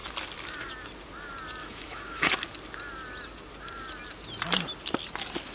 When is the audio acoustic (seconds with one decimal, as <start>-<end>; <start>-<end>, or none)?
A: 0.0-1.6; 2.3-5.5